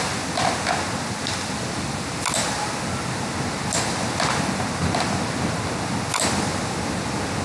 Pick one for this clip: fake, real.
real